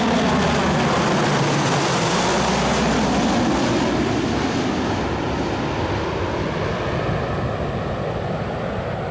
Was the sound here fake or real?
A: real